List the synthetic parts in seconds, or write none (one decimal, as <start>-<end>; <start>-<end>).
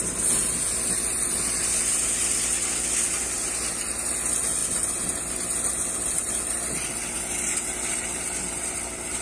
none